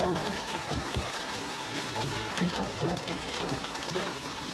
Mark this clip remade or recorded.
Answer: remade